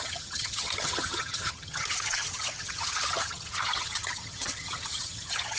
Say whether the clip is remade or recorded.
remade